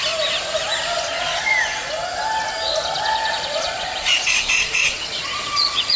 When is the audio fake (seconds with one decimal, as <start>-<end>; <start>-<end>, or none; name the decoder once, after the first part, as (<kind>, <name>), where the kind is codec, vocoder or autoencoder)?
1.1-1.5 (vocoder, Vocos); 3.3-6.0